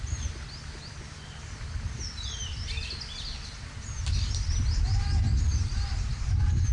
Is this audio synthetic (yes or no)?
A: no